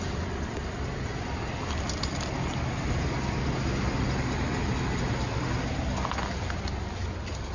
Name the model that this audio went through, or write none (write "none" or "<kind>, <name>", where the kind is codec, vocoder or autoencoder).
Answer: none